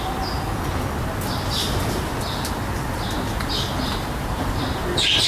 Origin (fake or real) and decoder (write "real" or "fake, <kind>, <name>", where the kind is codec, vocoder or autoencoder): real